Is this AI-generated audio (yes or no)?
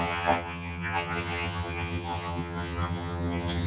yes